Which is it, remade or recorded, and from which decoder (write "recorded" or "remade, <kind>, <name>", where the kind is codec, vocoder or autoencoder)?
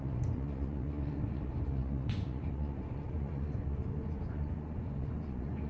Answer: remade, vocoder, Vocos